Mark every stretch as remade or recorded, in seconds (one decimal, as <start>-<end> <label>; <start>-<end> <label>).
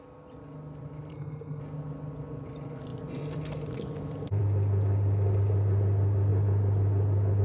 0.0-1.1 recorded; 1.1-1.6 remade; 1.6-7.4 recorded